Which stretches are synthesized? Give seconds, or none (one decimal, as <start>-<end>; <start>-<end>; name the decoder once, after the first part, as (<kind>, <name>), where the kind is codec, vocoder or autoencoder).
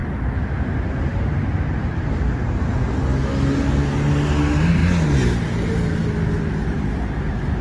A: none